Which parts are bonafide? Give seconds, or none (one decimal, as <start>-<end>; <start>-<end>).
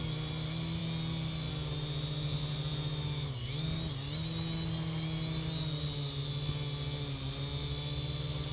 0.0-8.5